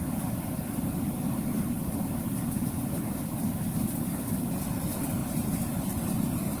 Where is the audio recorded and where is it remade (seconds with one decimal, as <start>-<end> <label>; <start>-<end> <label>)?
0.0-1.1 recorded; 1.1-4.1 remade; 4.1-5.2 recorded; 5.2-6.6 remade